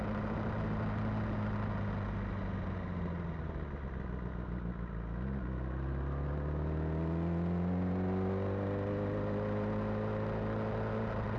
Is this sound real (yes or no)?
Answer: yes